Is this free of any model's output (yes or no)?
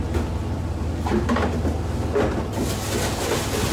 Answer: yes